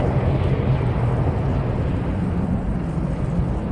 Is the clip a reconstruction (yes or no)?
no